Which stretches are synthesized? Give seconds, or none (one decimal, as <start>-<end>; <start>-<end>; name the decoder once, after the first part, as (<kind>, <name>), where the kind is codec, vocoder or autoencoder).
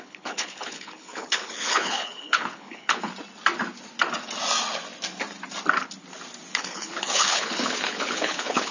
0.0-3.1 (codec, HILCodec); 6.5-8.7